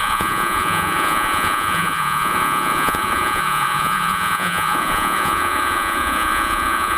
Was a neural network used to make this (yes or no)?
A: yes